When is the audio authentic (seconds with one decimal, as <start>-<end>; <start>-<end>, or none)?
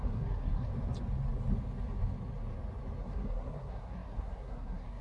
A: 0.7-3.0